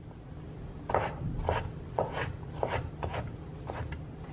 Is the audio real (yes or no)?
no